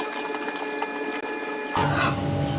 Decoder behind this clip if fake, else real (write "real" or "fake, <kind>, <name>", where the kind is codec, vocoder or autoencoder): real